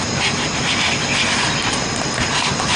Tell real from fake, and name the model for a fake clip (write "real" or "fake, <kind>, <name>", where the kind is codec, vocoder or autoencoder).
real